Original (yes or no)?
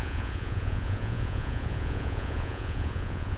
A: no